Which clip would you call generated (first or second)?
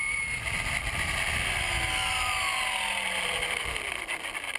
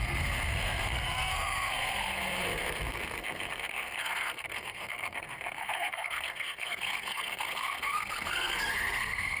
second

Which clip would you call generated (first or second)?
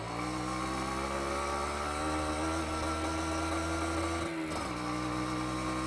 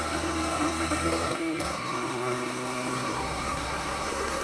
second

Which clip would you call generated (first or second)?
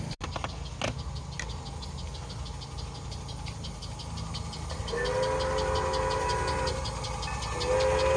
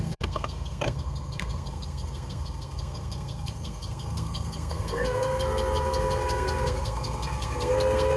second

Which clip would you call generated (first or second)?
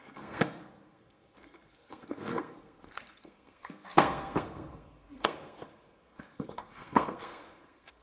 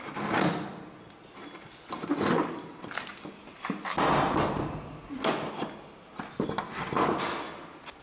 first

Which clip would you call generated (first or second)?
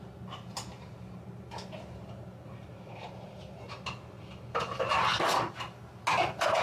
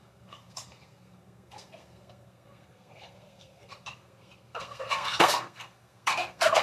second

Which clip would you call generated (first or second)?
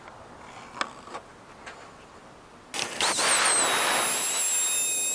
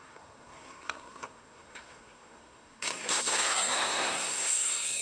second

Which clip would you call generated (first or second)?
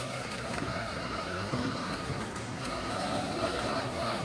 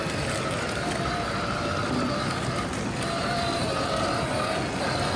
first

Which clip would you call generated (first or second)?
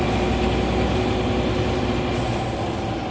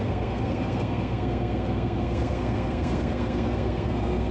second